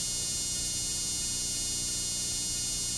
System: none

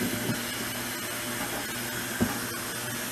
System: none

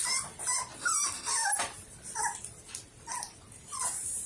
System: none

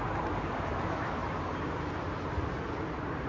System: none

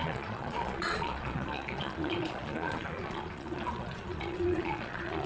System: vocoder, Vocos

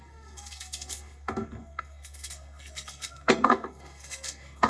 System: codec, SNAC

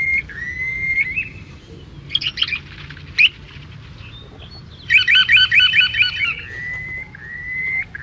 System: none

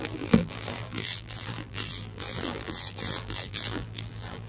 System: vocoder, BigVGAN v2